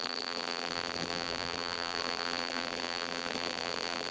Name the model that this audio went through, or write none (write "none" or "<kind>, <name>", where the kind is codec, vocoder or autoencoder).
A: vocoder, BigVGAN v2